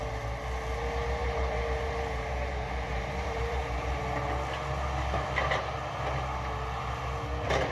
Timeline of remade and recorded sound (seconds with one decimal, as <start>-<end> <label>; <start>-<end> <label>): 0.0-1.2 recorded; 1.2-4.0 remade; 4.0-7.7 recorded